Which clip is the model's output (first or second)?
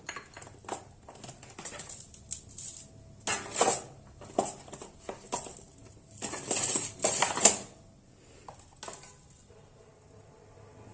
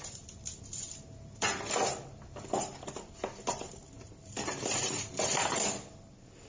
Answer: second